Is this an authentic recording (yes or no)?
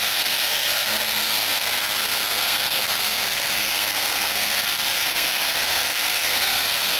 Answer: no